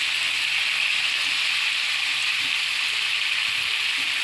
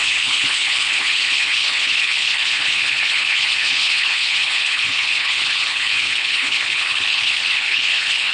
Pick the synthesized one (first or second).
second